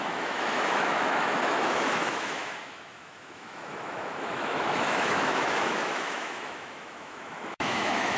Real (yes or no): no